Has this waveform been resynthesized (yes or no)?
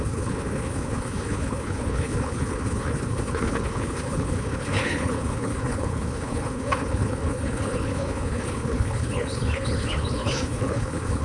yes